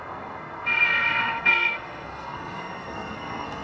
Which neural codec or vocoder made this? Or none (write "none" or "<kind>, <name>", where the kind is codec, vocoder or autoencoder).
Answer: codec, SNAC